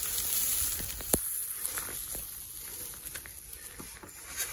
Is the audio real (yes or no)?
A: yes